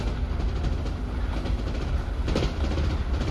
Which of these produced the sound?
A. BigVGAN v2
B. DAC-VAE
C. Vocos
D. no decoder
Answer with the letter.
A